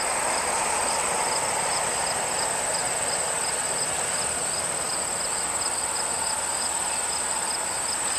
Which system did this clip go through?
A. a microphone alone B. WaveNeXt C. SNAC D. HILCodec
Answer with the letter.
A